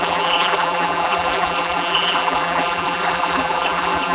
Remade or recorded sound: remade